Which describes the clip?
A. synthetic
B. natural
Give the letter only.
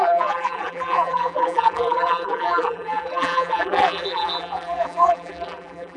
A